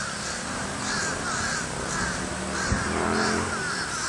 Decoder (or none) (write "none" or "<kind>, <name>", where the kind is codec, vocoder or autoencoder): vocoder, BigVGAN v2